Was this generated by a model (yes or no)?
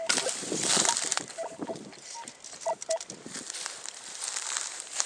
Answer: yes